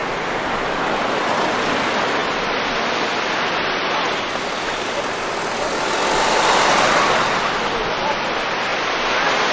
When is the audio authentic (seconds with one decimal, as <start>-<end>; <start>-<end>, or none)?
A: 0.0-9.5